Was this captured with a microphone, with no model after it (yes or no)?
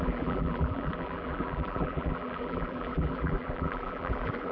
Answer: no